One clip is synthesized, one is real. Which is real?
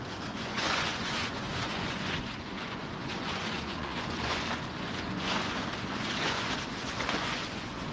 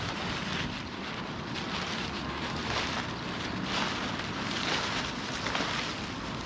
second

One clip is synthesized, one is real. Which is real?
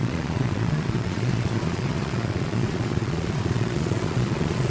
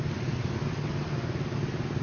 second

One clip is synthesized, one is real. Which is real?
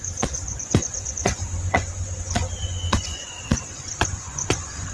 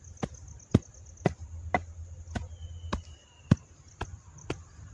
second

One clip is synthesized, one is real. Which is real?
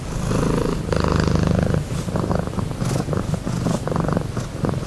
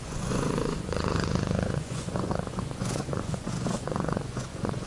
first